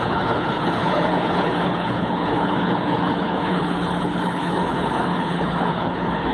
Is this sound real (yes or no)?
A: no